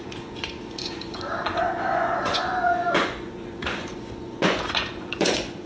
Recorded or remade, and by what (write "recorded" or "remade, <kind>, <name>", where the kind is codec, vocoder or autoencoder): remade, vocoder, Vocos